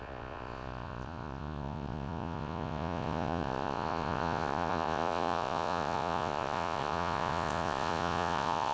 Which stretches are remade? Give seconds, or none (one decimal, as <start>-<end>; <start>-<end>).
0.0-8.7